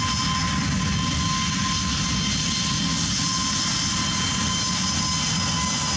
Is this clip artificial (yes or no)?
no